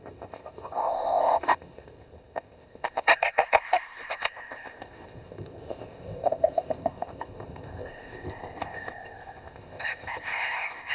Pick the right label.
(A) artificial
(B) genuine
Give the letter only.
A